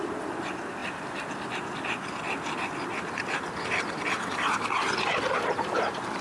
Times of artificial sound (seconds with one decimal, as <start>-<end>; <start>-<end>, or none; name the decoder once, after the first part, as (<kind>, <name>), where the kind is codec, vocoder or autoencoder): none